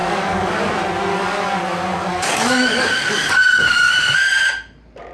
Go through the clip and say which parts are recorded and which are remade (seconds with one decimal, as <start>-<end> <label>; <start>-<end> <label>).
0.0-0.7 remade; 0.7-1.1 recorded; 1.1-3.9 remade; 3.9-5.1 recorded